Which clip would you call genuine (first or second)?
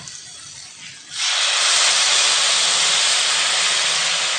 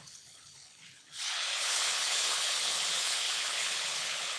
first